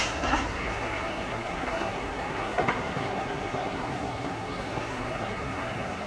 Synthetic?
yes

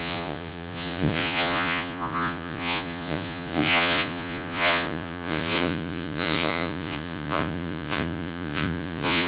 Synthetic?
yes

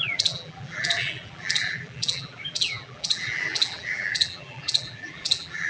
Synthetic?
yes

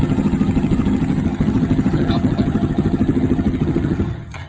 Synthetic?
yes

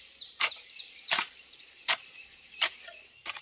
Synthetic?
yes